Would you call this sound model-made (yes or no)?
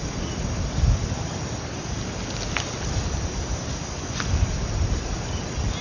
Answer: no